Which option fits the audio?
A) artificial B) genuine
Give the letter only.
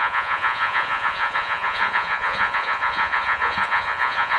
A